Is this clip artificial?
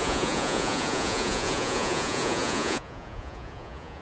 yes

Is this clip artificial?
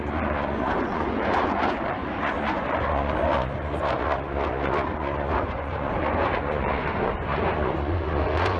yes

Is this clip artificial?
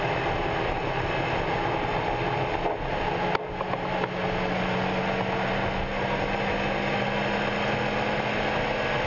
no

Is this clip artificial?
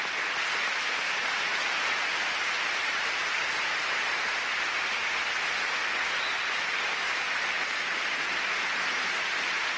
no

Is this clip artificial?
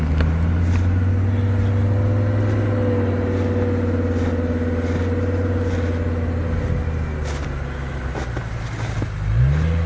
no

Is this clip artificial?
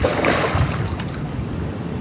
no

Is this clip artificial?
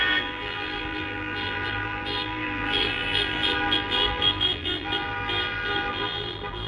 yes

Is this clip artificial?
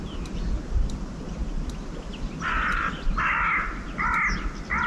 no